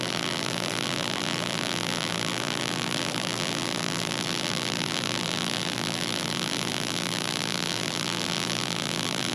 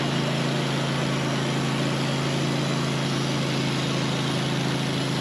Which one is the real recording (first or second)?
second